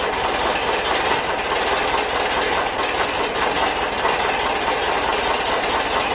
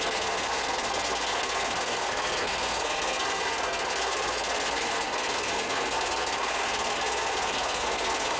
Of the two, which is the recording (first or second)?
first